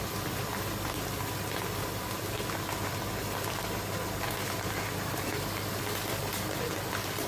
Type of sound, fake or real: real